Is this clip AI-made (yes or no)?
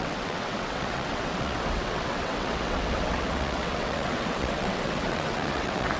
yes